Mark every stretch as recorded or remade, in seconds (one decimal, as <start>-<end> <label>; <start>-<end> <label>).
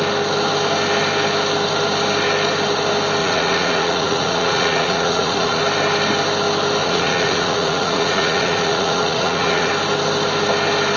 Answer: 0.0-3.2 recorded; 3.2-5.6 remade; 5.6-6.8 recorded; 6.8-9.7 remade; 9.7-11.0 recorded